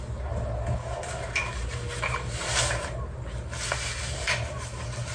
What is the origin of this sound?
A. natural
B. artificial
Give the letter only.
A